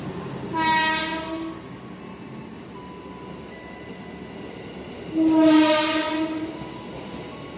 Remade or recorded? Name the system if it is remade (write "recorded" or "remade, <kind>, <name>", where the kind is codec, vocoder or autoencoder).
recorded